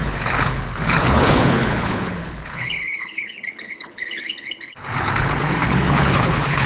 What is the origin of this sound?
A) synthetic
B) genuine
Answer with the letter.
A